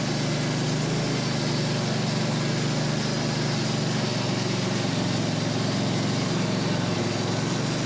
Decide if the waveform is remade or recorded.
recorded